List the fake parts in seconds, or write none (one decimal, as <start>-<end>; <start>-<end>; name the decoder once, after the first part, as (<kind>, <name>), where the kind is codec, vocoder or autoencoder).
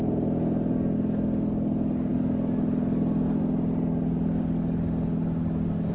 none